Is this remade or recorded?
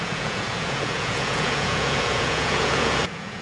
remade